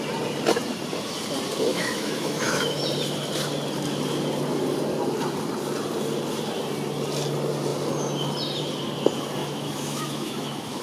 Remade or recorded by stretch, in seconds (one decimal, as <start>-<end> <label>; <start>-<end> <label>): 0.0-1.7 recorded; 1.7-2.8 remade; 2.8-9.4 recorded; 9.4-10.8 remade